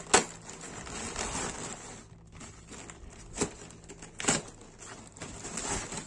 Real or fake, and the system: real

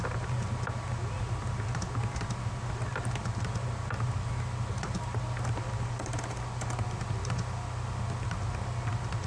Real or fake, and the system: real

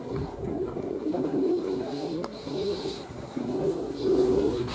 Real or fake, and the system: fake, codec, SNAC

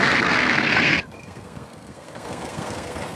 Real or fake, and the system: fake, codec, SNAC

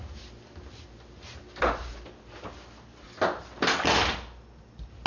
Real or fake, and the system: real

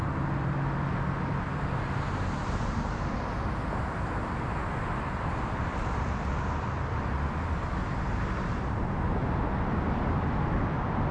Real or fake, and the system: real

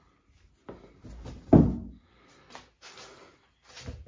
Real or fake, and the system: real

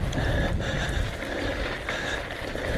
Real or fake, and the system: real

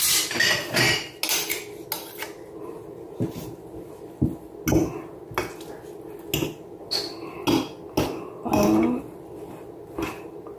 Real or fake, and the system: real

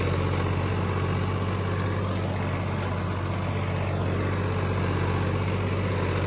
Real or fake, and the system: real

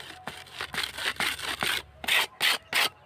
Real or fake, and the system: real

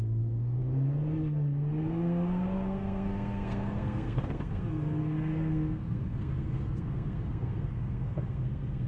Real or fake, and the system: fake, codec, SNAC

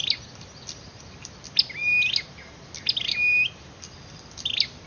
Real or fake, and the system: real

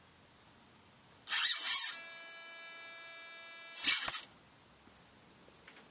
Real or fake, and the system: real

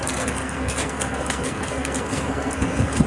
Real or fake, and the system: fake, codec, SNAC